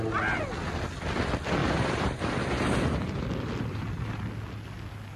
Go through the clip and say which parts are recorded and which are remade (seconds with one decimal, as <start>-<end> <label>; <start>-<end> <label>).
0.0-1.6 recorded; 1.6-2.8 remade; 2.8-5.2 recorded